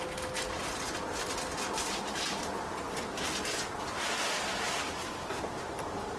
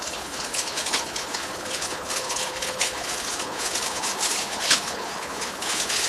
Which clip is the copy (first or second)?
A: second